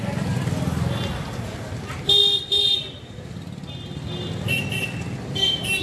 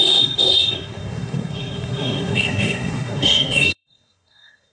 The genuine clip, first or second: first